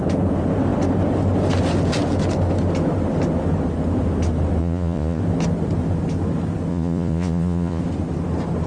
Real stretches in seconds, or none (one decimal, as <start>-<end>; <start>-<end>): 0.0-4.6; 5.2-6.7; 7.8-8.7